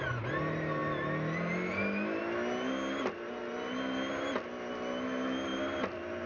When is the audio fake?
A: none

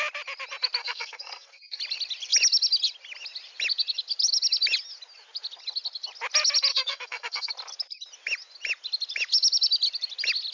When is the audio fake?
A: 0.8-1.8 (codec, SNAC); 6.7-7.5